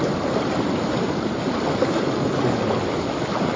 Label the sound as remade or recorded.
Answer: recorded